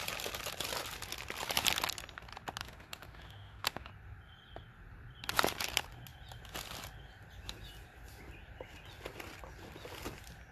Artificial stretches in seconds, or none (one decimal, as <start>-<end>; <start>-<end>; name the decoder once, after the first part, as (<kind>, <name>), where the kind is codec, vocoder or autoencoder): 2.6-3.9 (autoencoder, DAC-VAE)